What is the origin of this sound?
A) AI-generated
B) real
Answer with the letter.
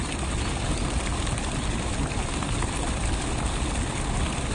B